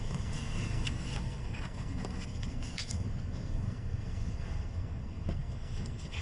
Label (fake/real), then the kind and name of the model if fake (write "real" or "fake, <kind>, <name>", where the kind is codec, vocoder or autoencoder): fake, codec, SNAC